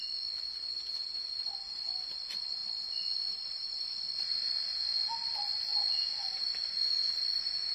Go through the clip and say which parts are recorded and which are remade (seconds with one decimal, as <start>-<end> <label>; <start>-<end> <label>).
0.0-7.7 recorded